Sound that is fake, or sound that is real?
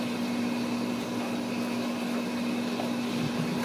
real